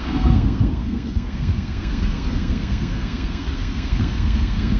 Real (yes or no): no